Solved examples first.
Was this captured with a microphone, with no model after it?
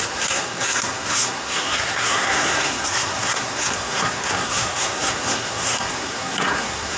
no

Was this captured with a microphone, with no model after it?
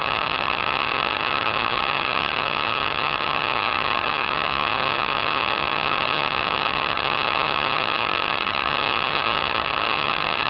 no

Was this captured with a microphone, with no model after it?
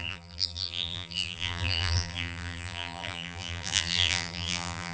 no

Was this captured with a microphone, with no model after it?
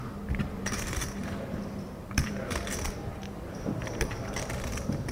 no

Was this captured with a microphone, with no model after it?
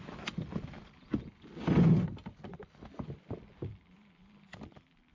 yes